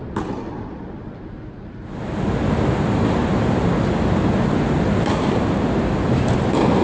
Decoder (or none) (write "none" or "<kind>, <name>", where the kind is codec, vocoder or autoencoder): none